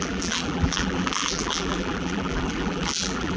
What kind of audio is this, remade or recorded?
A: remade